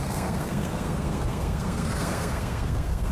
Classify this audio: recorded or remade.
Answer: remade